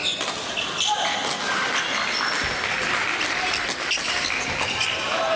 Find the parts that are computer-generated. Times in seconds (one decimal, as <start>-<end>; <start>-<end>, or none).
none